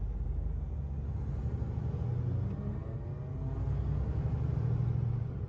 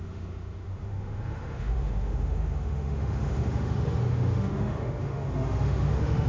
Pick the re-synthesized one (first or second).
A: second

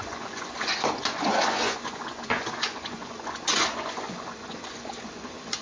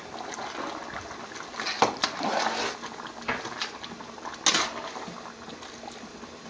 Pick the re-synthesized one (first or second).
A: first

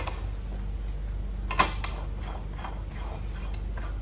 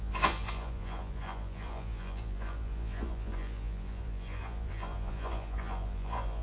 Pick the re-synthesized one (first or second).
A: second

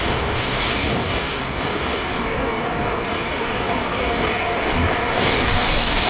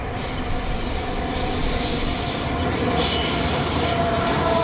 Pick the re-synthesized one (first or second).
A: first